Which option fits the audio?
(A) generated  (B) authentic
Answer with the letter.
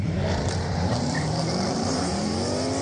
A